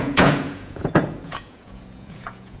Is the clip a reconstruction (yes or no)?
yes